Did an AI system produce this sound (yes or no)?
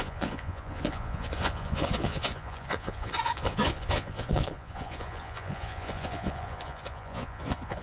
yes